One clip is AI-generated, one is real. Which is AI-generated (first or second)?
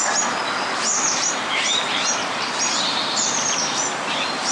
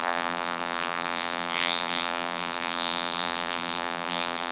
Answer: second